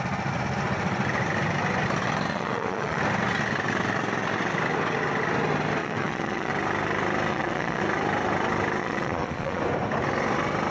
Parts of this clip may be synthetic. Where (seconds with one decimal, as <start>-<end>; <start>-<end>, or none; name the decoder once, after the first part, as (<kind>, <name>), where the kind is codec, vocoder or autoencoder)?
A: 2.3-3.0 (vocoder, Vocos); 5.8-6.5; 7.3-7.8; 8.8-9.6